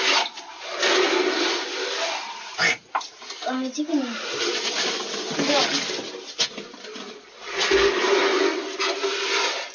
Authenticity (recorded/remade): recorded